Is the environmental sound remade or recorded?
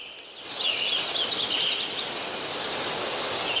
recorded